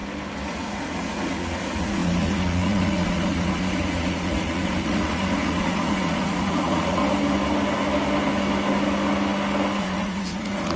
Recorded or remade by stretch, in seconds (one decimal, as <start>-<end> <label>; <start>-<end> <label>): 0.0-0.5 recorded; 0.5-7.0 remade; 7.0-9.8 recorded; 9.8-10.8 remade